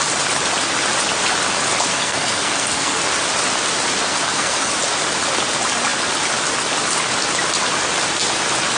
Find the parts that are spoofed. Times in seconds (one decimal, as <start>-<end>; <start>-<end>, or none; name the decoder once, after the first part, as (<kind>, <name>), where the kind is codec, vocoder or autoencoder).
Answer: 1.9-3.0 (codec, SNAC); 4.1-4.7